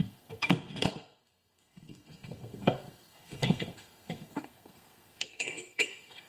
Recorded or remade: remade